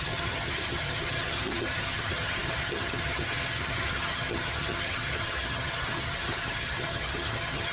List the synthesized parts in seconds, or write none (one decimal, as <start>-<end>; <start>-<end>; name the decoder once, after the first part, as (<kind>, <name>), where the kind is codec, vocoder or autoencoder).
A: 0.0-7.7 (vocoder, HiFi-GAN)